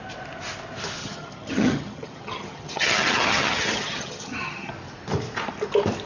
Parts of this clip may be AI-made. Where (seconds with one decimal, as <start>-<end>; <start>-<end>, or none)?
1.0-4.7